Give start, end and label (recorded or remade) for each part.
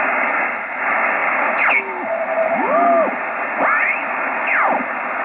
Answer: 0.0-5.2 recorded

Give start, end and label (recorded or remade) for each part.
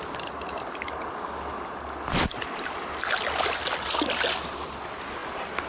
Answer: 0.0-5.7 recorded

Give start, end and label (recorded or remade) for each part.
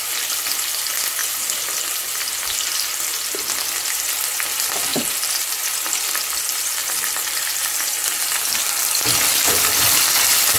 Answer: 0.0-10.6 recorded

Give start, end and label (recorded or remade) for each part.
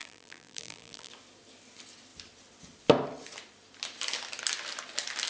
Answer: 0.0-1.1 remade; 1.1-5.3 recorded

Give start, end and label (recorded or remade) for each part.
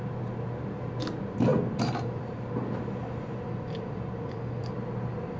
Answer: 0.0-1.5 recorded; 1.5-4.7 remade; 4.7-5.4 recorded